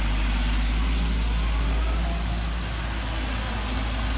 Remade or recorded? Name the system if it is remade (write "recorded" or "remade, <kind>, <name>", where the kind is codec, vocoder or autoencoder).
recorded